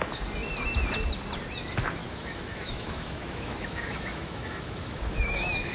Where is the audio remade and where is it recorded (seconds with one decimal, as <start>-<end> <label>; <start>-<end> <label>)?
0.0-2.0 recorded; 2.0-5.7 remade